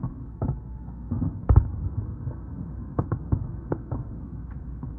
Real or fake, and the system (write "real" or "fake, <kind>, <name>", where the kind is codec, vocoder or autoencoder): fake, codec, SNAC